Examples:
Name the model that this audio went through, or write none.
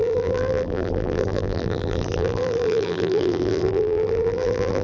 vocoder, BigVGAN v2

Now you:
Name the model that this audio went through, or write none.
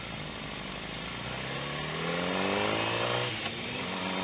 none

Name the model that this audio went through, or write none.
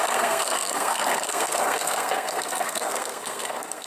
codec, SNAC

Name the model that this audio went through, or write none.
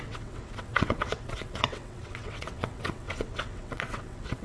vocoder, WaveNeXt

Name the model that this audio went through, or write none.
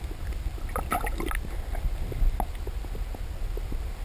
none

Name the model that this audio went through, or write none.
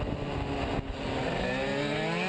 none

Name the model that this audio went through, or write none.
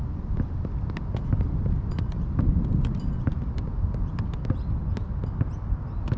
none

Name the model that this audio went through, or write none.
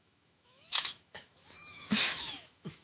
autoencoder, DAC-VAE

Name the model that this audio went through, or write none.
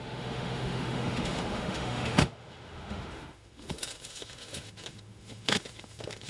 autoencoder, DAC-VAE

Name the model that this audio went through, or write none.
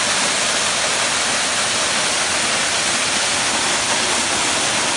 none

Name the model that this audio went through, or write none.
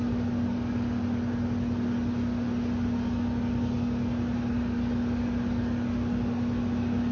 none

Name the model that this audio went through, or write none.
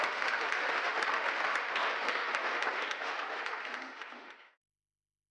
autoencoder, DAC-VAE